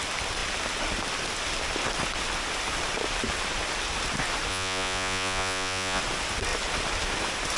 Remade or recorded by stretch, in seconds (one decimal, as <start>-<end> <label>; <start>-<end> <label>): 0.0-4.5 recorded; 4.5-6.0 remade; 6.0-7.6 recorded